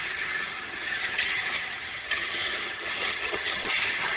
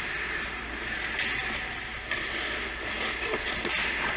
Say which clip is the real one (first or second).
second